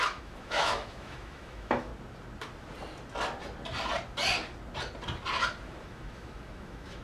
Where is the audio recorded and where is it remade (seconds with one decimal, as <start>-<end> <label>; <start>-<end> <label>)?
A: 0.0-1.9 remade; 1.9-5.8 recorded; 5.8-7.0 remade